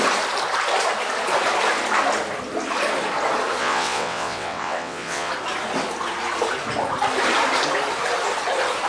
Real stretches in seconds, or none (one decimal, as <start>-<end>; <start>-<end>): 0.0-3.6; 5.3-8.9